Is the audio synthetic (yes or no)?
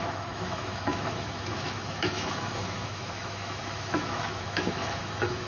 yes